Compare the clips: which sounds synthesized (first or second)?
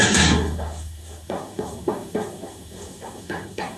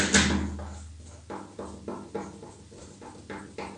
first